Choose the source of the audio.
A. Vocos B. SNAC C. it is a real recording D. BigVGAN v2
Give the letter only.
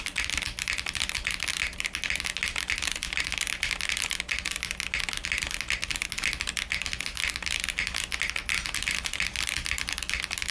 C